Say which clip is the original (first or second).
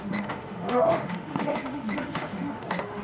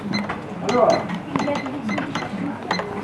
second